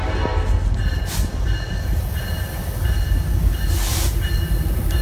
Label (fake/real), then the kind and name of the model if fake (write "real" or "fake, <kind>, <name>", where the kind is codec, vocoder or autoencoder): real